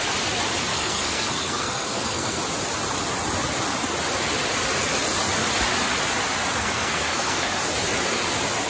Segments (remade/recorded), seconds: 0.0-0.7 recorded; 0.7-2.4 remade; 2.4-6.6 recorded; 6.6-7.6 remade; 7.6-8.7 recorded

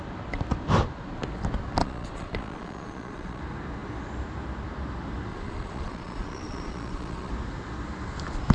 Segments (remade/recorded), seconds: 0.0-1.8 recorded; 1.8-3.4 remade; 3.4-5.3 recorded; 5.3-7.3 remade; 7.3-8.5 recorded

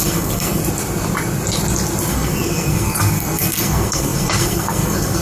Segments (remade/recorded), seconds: 0.0-0.6 remade; 0.6-2.1 recorded; 2.1-5.2 remade

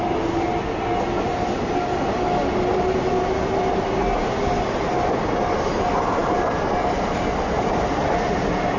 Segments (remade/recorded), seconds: 0.0-8.8 recorded

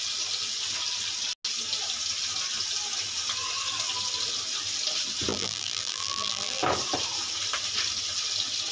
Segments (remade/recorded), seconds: 0.0-5.3 recorded; 5.3-6.6 remade; 6.6-8.7 recorded

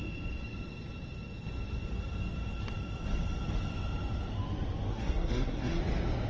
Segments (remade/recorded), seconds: 0.0-4.9 recorded; 4.9-5.8 remade; 5.8-6.3 recorded

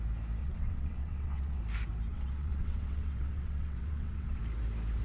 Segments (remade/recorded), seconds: 0.0-0.4 recorded; 0.4-1.6 remade; 1.6-2.1 recorded; 2.1-4.4 remade; 4.4-5.0 recorded